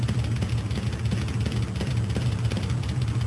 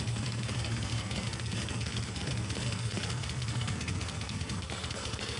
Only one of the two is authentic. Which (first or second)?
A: first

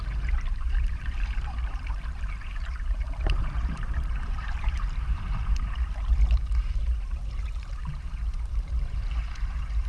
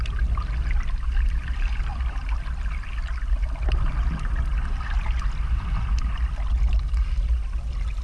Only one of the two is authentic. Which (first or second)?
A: second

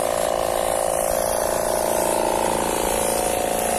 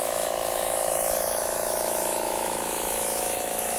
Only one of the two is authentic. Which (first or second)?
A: first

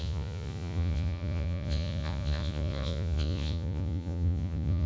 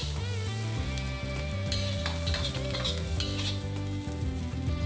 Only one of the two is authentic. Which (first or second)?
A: second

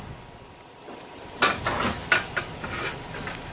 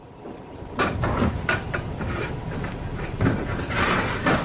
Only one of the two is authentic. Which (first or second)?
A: first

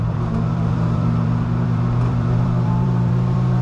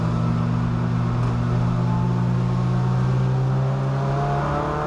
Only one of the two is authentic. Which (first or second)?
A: second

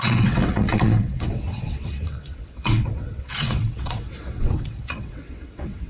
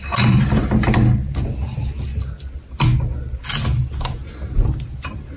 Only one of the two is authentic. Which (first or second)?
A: second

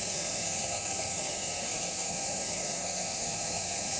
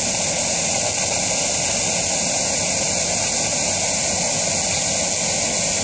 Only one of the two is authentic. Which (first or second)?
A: second